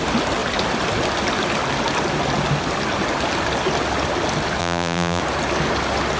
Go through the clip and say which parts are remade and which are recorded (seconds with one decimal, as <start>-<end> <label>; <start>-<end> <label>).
0.0-4.6 recorded; 4.6-5.2 remade; 5.2-6.2 recorded